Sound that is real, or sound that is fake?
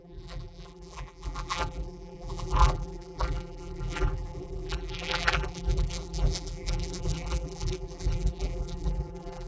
fake